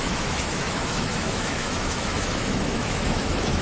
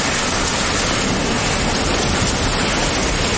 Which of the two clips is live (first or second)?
second